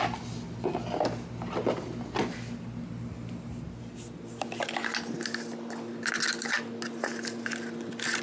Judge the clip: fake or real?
real